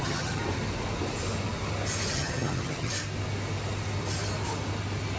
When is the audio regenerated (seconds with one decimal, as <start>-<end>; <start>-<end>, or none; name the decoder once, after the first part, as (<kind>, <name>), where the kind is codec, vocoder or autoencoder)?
0.0-0.4 (vocoder, HiFi-GAN); 2.1-2.9